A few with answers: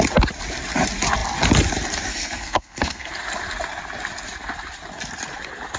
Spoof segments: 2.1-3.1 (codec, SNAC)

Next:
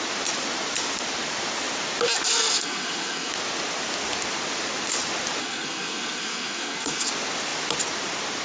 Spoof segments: 2.3-3.3 (codec, SNAC); 5.4-7.1

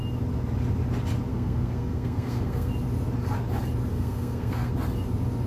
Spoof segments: 1.3-2.7 (codec, SNAC); 3.9-4.7

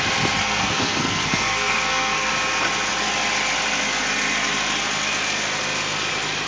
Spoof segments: 0.4-2.3 (codec, SNAC)